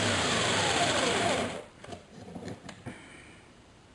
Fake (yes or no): yes